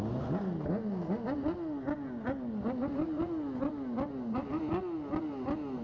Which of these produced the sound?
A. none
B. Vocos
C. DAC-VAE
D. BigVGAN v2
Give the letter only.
A